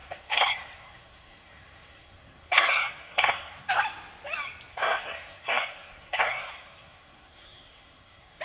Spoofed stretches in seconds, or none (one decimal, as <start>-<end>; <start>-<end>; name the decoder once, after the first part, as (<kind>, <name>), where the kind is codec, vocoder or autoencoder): 0.0-3.7 (codec, SNAC); 4.7-8.4